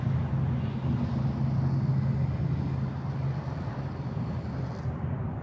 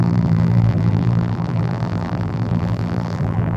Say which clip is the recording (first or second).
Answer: first